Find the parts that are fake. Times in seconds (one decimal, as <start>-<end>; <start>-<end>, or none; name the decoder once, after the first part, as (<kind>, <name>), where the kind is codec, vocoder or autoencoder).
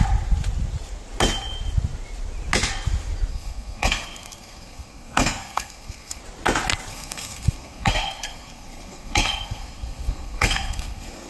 3.3-6.2 (codec, SNAC); 6.9-11.3